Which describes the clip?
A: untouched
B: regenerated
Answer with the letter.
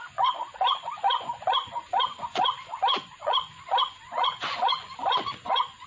B